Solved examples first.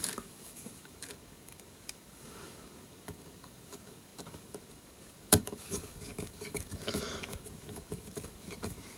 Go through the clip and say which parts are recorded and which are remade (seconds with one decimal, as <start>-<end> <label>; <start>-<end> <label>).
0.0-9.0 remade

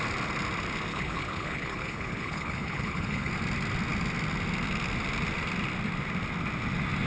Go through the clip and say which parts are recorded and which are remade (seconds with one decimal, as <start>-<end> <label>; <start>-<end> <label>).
0.0-0.9 recorded; 0.9-3.3 remade; 3.3-7.1 recorded

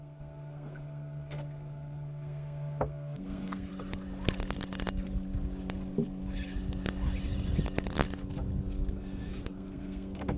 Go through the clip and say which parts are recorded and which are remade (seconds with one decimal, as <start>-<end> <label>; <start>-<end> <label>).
0.0-3.7 remade; 3.7-8.9 recorded; 8.9-10.4 remade

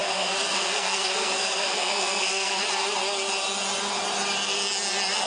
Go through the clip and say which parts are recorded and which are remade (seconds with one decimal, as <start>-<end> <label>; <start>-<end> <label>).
0.0-2.6 remade; 2.6-5.3 recorded

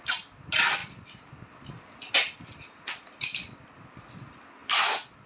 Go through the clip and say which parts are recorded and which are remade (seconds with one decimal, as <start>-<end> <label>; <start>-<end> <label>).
0.0-5.3 recorded